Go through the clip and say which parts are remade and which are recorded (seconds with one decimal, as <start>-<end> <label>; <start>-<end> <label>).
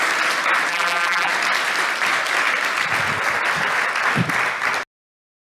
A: 0.0-0.7 recorded; 0.7-1.3 remade; 1.3-5.4 recorded